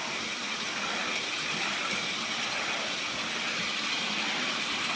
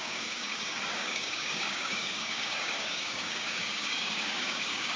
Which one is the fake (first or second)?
second